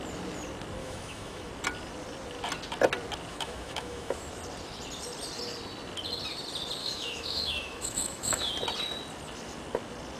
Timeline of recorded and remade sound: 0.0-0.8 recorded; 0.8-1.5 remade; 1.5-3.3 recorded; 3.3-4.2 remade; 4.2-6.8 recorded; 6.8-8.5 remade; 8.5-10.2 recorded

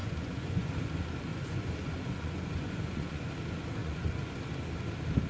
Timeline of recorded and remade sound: 0.0-0.7 remade; 0.7-1.3 recorded; 1.3-3.3 remade; 3.3-3.8 recorded; 3.8-4.3 remade; 4.3-5.3 recorded

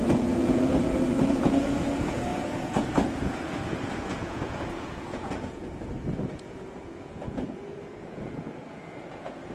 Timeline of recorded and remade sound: 0.0-5.6 remade; 5.6-6.3 recorded; 6.3-9.5 remade

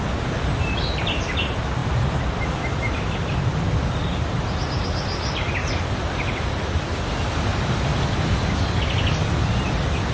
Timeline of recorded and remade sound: 0.0-1.8 recorded; 1.8-2.7 remade; 2.7-5.6 recorded; 5.6-6.8 remade; 6.8-10.1 recorded

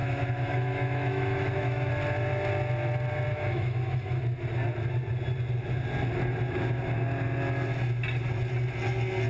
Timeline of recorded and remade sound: 0.0-1.9 remade; 1.9-3.3 recorded; 3.3-4.2 remade; 4.2-9.3 recorded